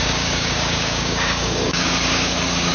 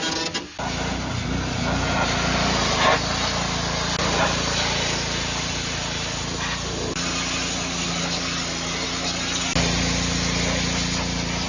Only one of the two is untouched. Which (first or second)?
second